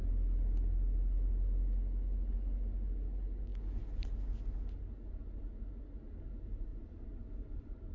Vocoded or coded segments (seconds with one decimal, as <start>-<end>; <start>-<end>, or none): 6.7-7.9

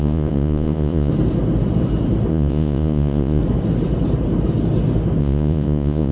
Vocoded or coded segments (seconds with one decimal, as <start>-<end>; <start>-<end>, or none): 0.0-1.1; 2.3-3.4; 5.2-6.1

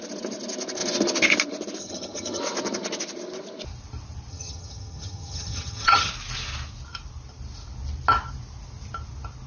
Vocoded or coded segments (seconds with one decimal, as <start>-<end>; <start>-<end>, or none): 1.8-2.4; 4.3-6.1

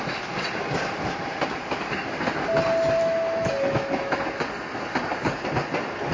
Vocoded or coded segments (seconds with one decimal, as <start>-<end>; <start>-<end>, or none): 3.0-4.2

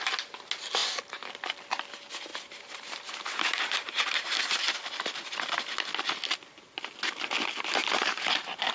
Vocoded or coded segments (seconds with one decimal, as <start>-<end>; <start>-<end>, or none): 2.3-5.0; 7.8-8.7